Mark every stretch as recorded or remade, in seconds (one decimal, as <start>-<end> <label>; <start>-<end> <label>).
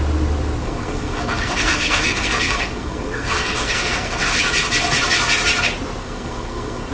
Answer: 0.0-0.6 recorded; 0.6-4.4 remade; 4.4-6.0 recorded; 6.0-6.9 remade